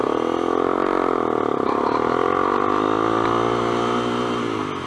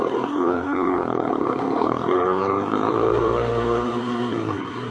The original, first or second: first